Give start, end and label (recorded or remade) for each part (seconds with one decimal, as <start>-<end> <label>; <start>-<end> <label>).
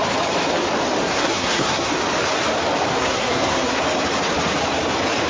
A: 0.0-1.0 recorded; 1.0-1.9 remade; 1.9-2.9 recorded; 2.9-3.8 remade; 3.8-5.3 recorded